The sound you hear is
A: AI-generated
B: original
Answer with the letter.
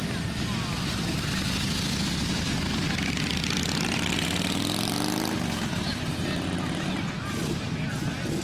B